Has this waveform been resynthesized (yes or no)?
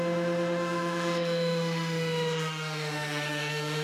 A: yes